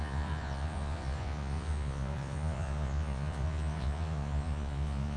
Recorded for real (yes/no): no